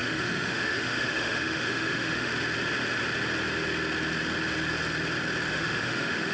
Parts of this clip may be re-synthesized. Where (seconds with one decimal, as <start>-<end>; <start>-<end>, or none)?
0.0-2.3; 5.5-6.3